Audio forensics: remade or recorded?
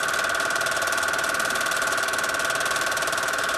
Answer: remade